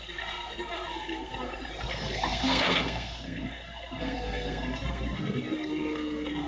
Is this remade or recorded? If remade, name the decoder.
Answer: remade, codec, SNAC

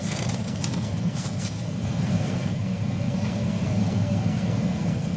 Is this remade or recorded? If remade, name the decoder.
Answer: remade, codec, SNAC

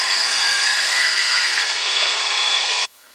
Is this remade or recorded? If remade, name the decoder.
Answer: remade, codec, SNAC